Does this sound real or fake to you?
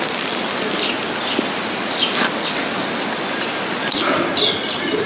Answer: real